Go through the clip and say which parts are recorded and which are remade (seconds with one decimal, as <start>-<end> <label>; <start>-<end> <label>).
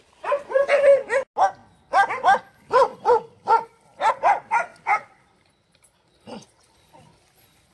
0.0-7.7 recorded